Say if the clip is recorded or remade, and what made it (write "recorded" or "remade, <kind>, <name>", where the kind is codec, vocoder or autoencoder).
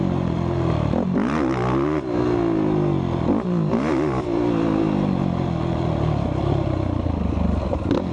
recorded